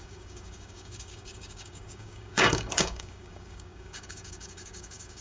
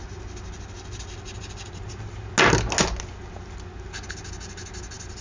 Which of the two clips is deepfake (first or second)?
first